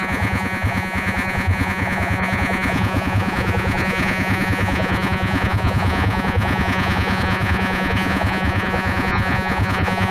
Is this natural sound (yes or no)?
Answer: no